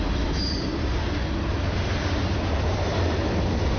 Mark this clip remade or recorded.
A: recorded